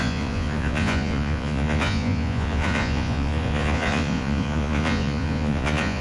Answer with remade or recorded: remade